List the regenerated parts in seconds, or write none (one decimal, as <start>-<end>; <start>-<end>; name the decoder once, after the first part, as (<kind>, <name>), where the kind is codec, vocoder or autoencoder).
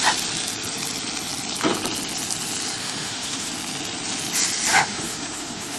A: 2.8-3.5 (autoencoder, DAC-VAE); 4.7-5.8